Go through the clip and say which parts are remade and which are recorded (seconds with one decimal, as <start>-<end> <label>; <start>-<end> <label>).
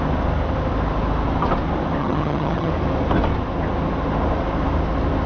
0.0-2.0 recorded; 2.0-2.7 remade; 2.7-5.3 recorded